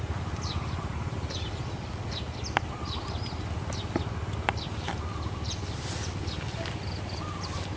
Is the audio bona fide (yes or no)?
yes